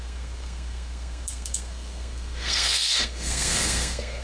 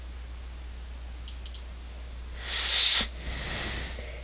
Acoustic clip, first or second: second